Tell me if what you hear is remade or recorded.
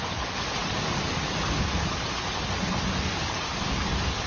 recorded